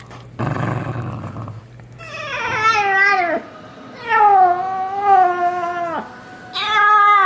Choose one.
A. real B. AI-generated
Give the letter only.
A